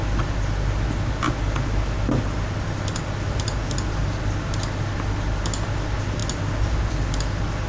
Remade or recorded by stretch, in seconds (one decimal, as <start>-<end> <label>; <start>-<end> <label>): 0.0-7.7 recorded